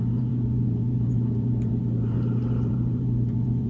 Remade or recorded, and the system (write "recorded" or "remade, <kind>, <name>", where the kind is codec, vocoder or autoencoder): remade, vocoder, BigVGAN v2